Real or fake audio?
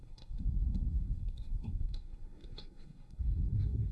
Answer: fake